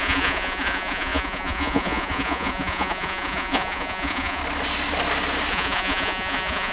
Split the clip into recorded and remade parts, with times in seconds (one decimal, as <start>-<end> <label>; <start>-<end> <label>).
0.0-4.4 remade; 4.4-5.5 recorded; 5.5-6.7 remade